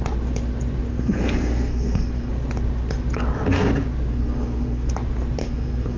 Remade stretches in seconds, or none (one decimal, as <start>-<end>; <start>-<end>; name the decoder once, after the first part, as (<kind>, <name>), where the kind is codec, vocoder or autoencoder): 0.9-2.3 (codec, SNAC); 4.1-4.9; 5.4-6.0